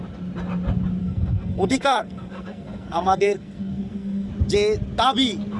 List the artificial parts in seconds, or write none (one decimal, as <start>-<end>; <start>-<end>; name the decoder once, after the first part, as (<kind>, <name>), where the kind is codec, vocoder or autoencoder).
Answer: 1.0-4.3 (codec, SNAC)